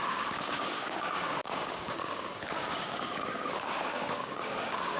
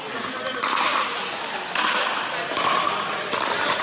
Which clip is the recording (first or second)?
second